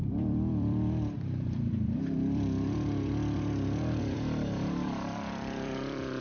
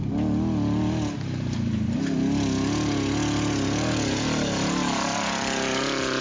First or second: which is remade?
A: first